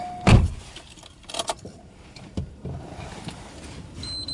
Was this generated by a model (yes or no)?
yes